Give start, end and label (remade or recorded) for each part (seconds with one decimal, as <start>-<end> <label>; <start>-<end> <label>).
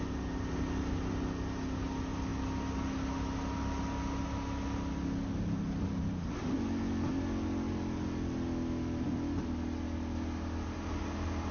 0.0-11.5 recorded